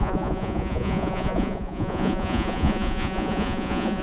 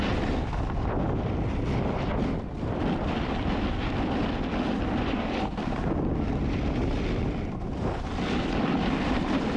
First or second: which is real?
second